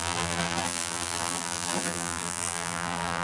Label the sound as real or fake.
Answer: fake